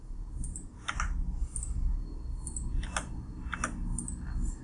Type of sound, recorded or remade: recorded